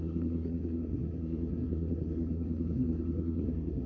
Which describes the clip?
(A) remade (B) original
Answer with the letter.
A